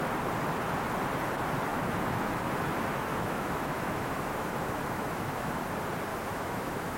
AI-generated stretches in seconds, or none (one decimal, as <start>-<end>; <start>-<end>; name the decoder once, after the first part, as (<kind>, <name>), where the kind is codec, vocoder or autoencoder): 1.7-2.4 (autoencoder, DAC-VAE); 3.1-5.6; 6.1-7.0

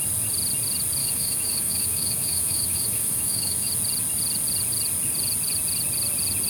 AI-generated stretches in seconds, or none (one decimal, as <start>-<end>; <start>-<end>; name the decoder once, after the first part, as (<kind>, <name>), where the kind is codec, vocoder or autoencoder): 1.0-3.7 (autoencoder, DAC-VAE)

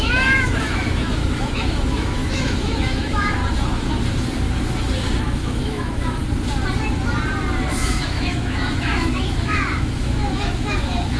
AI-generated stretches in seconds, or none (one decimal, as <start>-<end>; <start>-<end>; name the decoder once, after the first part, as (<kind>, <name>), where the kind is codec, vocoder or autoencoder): 0.0-3.4 (autoencoder, DAC-VAE); 5.2-6.2; 7.7-11.2